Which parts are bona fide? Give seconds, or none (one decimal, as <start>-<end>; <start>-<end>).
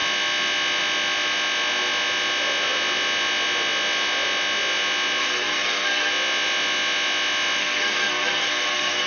0.0-5.2; 6.1-7.6